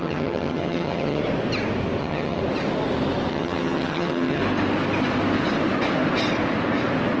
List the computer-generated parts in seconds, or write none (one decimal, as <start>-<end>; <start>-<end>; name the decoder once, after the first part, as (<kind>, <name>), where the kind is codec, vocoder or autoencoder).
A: 0.0-1.2 (vocoder, HiFi-GAN); 2.0-2.4; 3.3-4.4